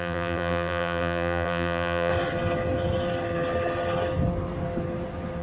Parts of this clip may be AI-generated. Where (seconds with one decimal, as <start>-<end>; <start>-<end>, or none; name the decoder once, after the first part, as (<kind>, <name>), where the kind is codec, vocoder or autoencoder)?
0.0-2.1 (vocoder, BigVGAN v2)